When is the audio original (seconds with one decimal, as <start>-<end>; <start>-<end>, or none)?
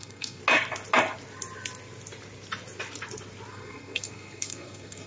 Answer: 0.4-3.5